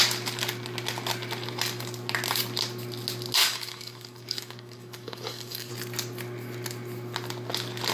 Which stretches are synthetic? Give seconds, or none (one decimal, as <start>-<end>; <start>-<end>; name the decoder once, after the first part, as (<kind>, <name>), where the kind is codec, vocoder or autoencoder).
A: 3.4-5.7 (codec, DAC)